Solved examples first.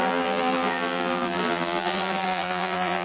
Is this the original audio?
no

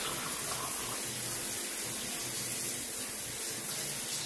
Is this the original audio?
yes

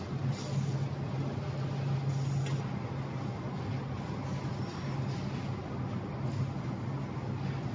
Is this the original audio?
yes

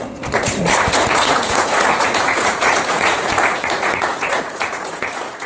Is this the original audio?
no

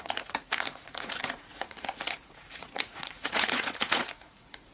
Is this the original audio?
no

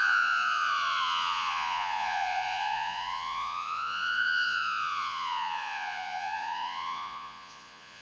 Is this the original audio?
no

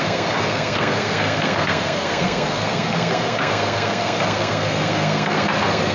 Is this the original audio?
no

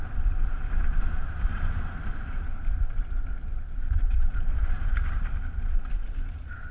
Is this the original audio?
no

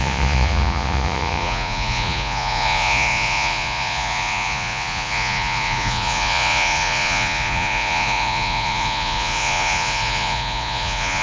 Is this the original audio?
no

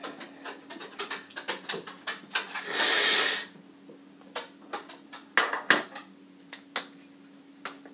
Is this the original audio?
yes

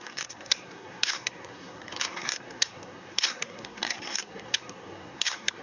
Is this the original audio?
no